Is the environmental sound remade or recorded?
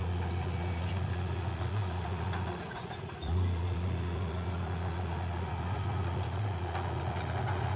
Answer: remade